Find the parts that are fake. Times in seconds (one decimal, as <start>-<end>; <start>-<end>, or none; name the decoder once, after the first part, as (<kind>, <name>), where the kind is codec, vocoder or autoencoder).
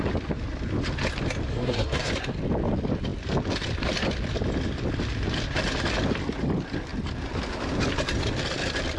1.5-2.1 (codec, SNAC)